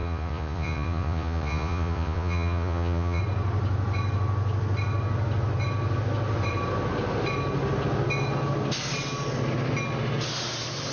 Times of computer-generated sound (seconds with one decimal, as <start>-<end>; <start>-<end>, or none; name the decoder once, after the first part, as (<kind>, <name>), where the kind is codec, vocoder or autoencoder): 0.0-3.2 (vocoder, Vocos)